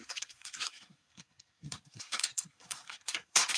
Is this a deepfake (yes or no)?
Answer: yes